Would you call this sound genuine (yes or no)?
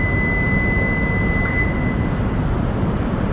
yes